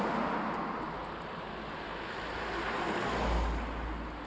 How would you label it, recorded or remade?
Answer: recorded